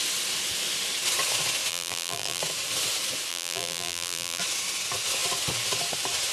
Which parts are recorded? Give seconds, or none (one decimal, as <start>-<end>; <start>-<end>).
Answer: 0.0-1.7; 2.4-3.3; 4.4-6.3